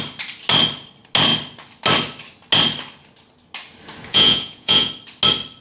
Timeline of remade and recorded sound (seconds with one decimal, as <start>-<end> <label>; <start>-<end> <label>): 0.0-4.1 recorded; 4.1-4.9 remade; 4.9-5.6 recorded